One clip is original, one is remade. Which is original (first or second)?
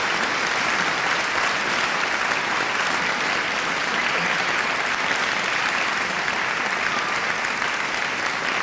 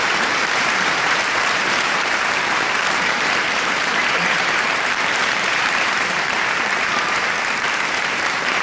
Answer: first